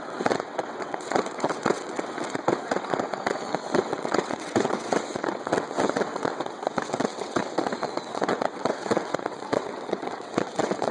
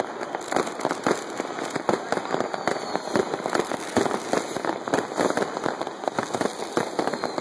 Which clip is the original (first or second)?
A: second